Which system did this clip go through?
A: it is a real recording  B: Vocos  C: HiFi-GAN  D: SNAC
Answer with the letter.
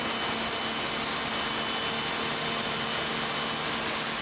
A